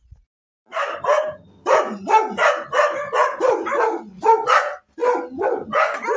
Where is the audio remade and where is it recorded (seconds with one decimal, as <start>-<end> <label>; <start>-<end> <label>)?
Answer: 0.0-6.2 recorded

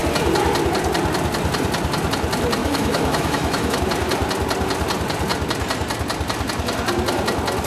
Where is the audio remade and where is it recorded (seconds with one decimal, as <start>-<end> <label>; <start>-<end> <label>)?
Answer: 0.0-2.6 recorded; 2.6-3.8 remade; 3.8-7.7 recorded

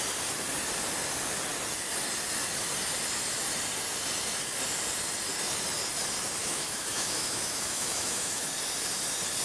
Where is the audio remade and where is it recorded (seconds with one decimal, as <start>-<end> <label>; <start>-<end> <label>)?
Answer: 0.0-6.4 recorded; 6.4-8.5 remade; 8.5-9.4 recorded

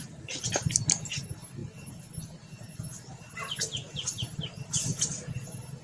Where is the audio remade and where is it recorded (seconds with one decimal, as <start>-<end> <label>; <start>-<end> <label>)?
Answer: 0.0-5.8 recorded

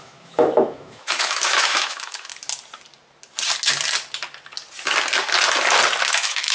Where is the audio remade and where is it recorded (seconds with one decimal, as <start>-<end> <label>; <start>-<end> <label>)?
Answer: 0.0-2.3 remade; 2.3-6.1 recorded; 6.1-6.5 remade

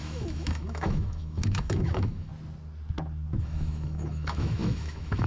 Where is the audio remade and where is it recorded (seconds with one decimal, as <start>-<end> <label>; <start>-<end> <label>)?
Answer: 0.0-2.3 remade; 2.3-3.4 recorded; 3.4-5.3 remade

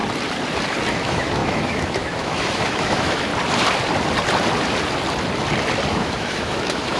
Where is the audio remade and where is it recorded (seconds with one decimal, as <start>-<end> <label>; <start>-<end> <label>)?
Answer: 0.0-0.9 recorded; 0.9-3.3 remade; 3.3-5.9 recorded; 5.9-7.0 remade

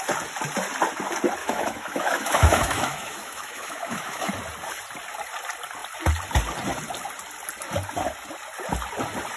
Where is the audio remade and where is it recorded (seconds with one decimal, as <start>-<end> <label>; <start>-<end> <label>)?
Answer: 0.0-1.4 recorded; 1.4-4.3 remade; 4.3-9.4 recorded